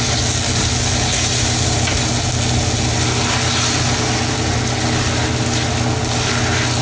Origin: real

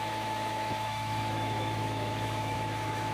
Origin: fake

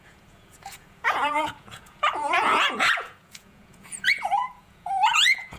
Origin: fake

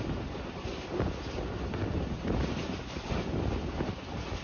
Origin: real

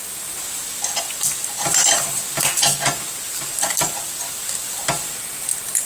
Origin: real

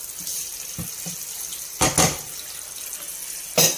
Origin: real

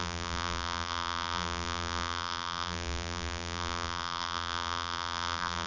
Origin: fake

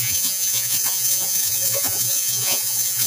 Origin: fake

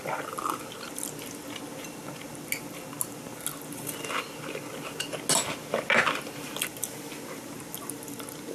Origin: real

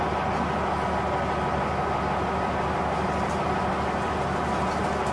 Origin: real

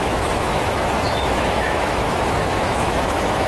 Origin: fake